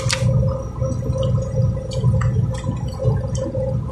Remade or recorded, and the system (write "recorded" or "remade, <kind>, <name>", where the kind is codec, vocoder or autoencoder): recorded